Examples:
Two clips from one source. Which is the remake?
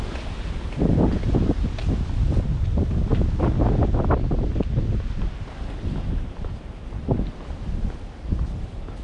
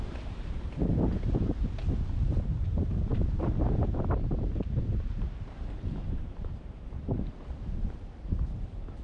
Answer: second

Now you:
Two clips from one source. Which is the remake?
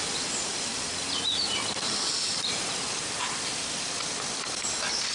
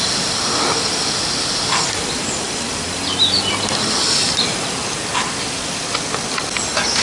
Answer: first